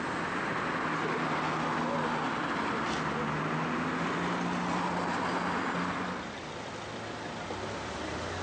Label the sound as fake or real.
real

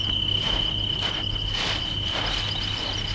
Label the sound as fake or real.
real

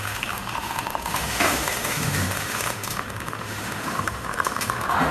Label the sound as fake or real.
fake